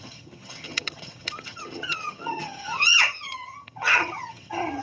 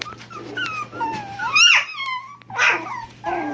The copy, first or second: first